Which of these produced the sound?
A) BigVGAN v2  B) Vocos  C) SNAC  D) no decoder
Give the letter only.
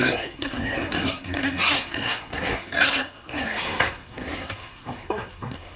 C